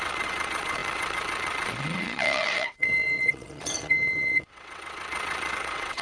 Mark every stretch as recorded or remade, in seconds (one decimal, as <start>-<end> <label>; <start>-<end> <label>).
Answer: 0.0-6.0 remade